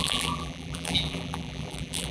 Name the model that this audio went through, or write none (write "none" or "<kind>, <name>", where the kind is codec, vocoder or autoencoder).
vocoder, BigVGAN v2